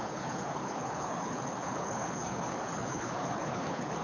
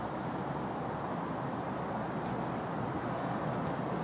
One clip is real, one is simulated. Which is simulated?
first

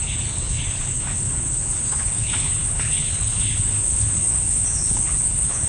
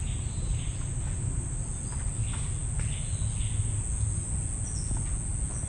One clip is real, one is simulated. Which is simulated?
first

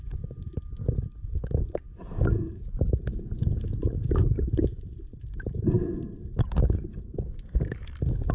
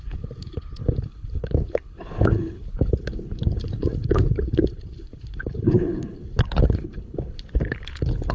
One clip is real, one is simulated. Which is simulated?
second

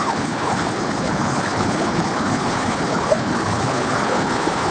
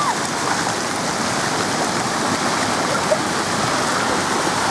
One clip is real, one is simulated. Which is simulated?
first